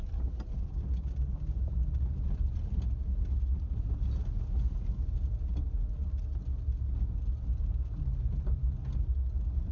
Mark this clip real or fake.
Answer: real